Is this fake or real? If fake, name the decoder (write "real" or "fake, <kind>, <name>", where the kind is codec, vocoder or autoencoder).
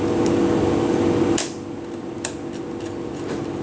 real